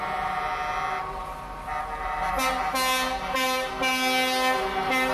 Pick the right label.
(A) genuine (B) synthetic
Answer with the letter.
A